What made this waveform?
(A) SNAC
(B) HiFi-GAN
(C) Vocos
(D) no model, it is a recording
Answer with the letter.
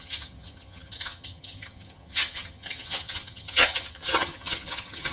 B